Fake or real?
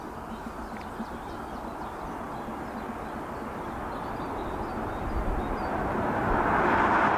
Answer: real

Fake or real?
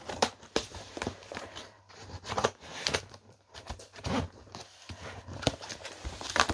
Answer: fake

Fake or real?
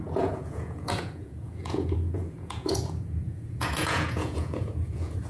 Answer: fake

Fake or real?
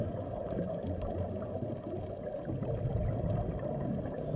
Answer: real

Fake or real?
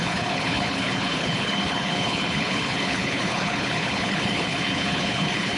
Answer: fake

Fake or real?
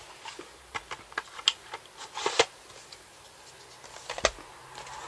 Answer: real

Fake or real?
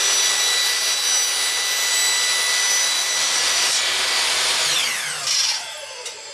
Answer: real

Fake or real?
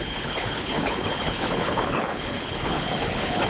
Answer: fake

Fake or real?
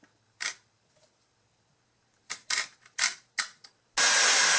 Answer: real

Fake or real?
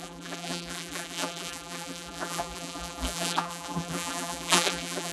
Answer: fake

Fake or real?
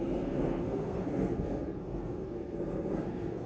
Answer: fake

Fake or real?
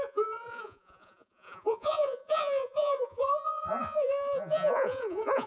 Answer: fake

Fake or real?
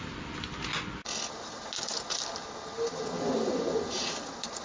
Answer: real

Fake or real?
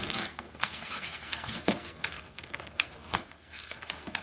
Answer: fake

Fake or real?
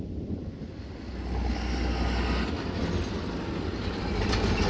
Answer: real